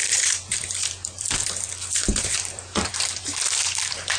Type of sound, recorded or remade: remade